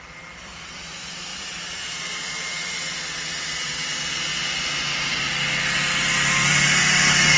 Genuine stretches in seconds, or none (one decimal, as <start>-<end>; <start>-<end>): 4.3-5.2